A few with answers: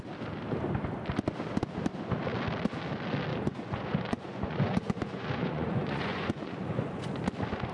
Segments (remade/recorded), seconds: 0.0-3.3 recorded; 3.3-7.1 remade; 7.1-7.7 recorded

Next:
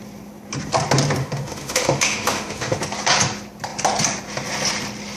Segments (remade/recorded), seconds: 0.0-1.2 recorded; 1.2-2.8 remade; 2.8-5.2 recorded

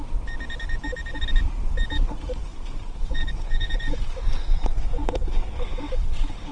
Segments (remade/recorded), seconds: 0.0-2.4 recorded; 2.4-6.5 remade